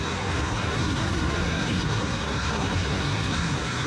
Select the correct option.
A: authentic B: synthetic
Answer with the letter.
B